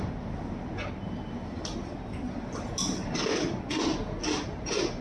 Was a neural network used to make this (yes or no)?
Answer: no